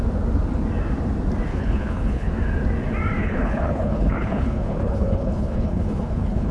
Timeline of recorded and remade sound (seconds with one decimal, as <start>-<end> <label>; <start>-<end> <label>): 0.0-1.5 recorded; 1.5-2.3 remade; 2.3-3.2 recorded; 3.2-6.5 remade